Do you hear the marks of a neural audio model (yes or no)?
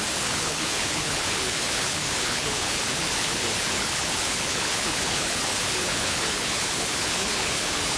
yes